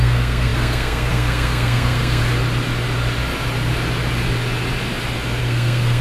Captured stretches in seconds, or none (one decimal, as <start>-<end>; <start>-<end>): 2.2-5.4